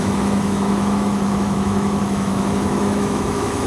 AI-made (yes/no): yes